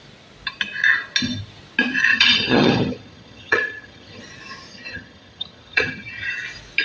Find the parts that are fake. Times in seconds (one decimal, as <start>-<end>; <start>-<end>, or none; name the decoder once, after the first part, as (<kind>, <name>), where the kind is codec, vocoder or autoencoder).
2.1-4.2 (vocoder, HiFi-GAN); 4.7-6.3